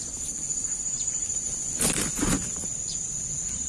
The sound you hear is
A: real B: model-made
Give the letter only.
A